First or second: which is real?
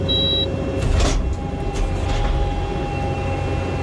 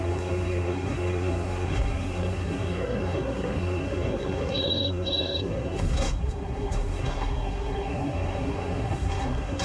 first